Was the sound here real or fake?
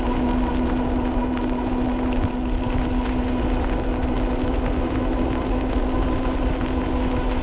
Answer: real